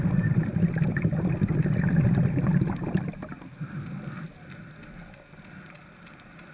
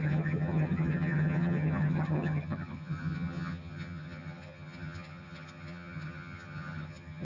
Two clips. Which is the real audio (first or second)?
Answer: first